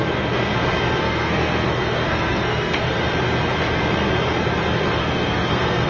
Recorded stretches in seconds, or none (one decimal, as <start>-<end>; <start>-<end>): 0.5-1.0; 3.0-5.0